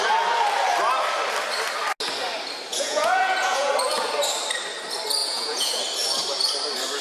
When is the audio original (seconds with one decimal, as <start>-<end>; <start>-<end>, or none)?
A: 0.0-2.7; 3.7-5.2; 5.8-7.0